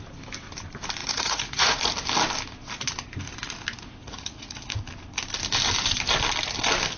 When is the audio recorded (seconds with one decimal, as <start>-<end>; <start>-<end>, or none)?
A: 0.0-1.0; 1.9-4.0; 4.8-7.0